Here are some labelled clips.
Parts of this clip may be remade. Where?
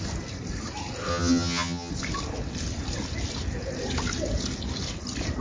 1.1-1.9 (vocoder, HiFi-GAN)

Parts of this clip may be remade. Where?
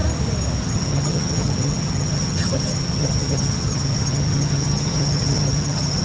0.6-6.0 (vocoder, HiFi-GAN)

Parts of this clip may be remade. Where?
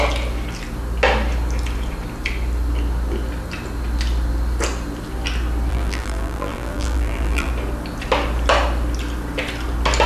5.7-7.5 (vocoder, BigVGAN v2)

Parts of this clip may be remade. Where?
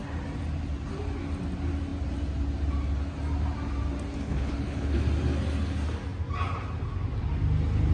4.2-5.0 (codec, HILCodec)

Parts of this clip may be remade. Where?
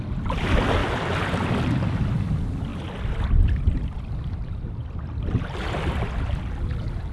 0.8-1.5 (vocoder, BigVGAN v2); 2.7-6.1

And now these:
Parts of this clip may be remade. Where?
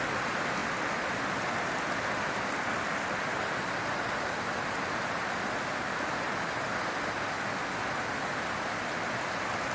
none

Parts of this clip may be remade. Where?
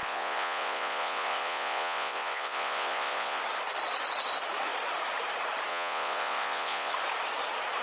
0.0-3.4 (vocoder, Vocos); 5.7-6.9